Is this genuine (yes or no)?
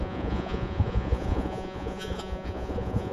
no